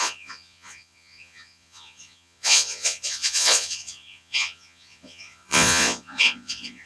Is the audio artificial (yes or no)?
yes